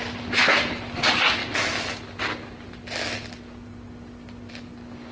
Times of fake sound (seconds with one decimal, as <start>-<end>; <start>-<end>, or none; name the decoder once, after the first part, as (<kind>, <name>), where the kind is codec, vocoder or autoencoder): none